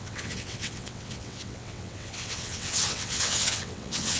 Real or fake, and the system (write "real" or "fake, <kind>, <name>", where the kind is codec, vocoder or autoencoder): fake, vocoder, WaveNeXt